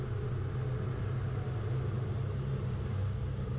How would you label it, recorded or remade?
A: recorded